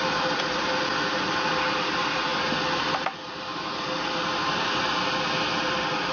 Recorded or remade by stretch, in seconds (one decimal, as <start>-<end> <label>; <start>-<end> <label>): 0.0-2.3 remade; 2.3-5.6 recorded; 5.6-6.1 remade